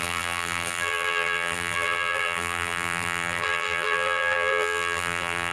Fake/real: fake